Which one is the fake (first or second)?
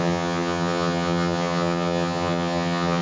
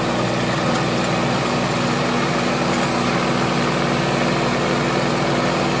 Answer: first